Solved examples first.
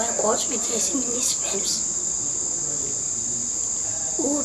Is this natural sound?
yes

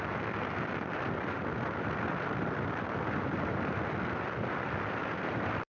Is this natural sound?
no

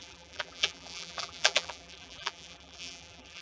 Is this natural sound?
no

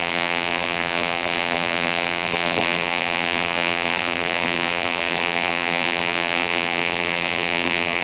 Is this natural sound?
no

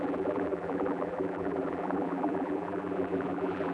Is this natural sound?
no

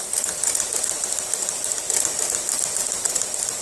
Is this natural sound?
no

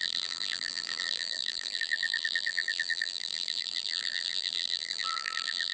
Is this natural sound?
no